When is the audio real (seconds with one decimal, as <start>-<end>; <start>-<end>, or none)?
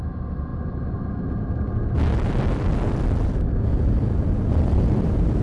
0.0-5.4